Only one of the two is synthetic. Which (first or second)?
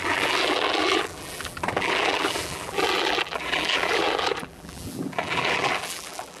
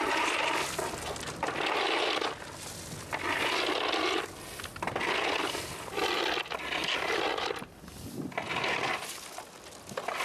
first